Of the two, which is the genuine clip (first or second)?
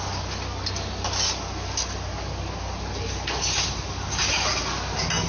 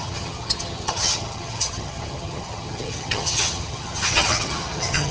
first